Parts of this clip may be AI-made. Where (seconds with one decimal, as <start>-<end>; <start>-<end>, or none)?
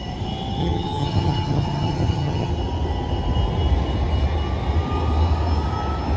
0.6-2.5